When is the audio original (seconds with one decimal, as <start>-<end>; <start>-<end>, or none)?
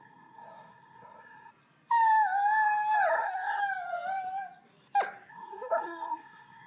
1.5-3.1; 3.6-5.3